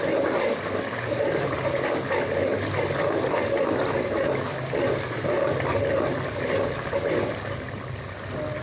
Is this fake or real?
real